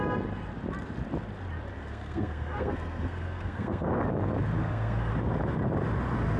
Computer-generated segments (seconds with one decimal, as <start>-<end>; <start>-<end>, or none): 1.8-4.0; 4.6-5.1